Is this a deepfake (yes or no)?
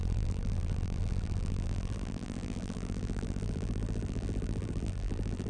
yes